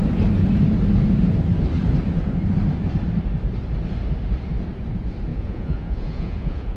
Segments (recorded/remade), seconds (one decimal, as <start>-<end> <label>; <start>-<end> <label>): 0.0-5.3 recorded; 5.3-6.8 remade